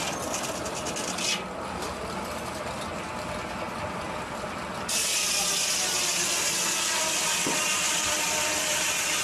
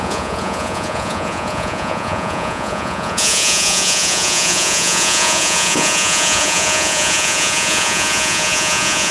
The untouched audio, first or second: first